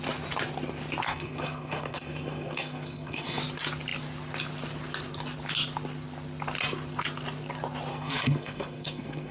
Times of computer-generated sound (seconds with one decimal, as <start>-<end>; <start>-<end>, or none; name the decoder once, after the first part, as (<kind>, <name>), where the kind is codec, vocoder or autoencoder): 1.1-3.4 (codec, SNAC); 7.9-9.3